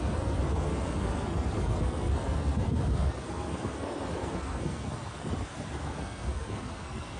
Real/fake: fake